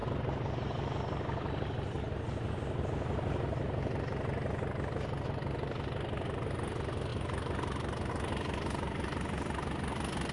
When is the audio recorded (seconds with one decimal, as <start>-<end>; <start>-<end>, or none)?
0.0-10.3